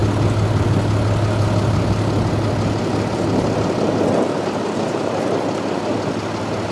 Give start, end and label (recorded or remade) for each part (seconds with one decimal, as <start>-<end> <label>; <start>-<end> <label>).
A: 0.0-6.7 recorded